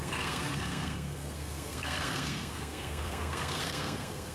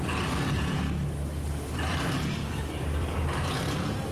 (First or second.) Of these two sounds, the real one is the second